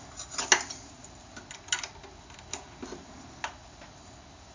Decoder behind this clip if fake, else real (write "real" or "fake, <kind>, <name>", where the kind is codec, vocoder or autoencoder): real